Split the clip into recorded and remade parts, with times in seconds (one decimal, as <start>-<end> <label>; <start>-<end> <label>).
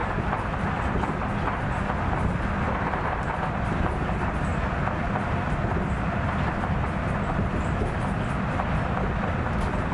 0.0-9.9 recorded